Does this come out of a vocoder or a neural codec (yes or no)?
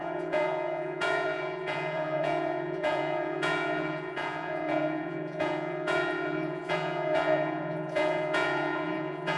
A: yes